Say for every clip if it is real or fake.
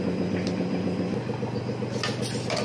real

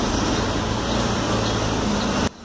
real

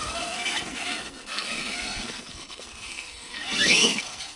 fake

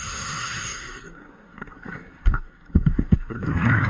fake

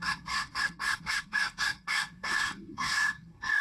fake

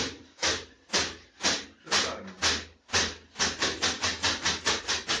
real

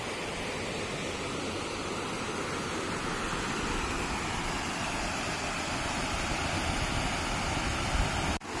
real